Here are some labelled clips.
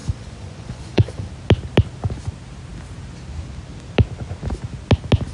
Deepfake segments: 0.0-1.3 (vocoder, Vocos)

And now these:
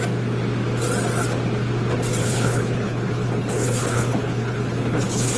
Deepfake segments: 2.2-5.4 (codec, HILCodec)

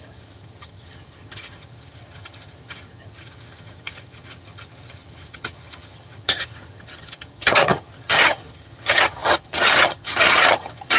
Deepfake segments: 0.0-11.0 (vocoder, HiFi-GAN)

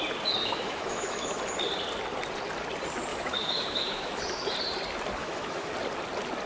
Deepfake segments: 0.4-1.4 (autoencoder, DAC-VAE); 3.1-4.2; 5.2-5.7

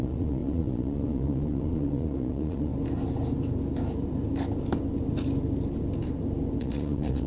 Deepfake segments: 0.0-2.7 (vocoder, Vocos); 6.6-7.3

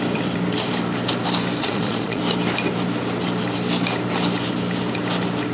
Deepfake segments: 1.6-2.2 (vocoder, Vocos)

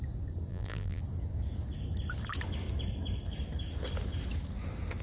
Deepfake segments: 0.5-1.0 (vocoder, BigVGAN v2)

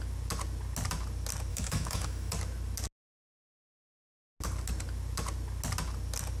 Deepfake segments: 1.5-2.3 (autoencoder, DAC-VAE)